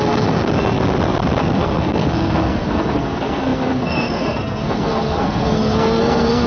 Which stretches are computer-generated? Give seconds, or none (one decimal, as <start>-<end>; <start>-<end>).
0.0-0.5; 1.4-6.5